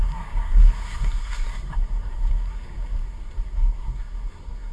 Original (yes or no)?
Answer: no